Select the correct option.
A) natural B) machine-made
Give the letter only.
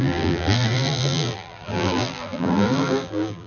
B